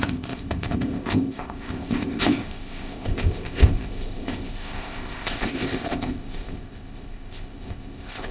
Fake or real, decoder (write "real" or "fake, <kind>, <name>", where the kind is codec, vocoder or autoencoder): fake, codec, ZipCodec